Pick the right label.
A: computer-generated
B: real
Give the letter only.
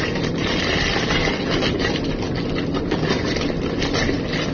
A